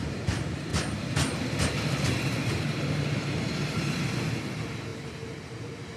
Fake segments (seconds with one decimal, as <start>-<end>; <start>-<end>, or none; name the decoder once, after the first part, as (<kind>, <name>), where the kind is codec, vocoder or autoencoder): 0.0-0.7 (vocoder, BigVGAN v2); 4.3-6.0